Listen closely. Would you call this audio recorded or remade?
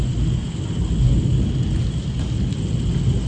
recorded